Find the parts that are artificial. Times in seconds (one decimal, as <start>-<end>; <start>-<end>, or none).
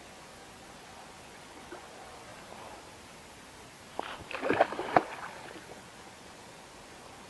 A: 0.0-2.3; 5.7-7.3